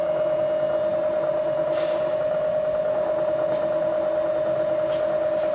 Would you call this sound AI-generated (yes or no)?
no